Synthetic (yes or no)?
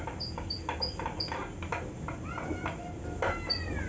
no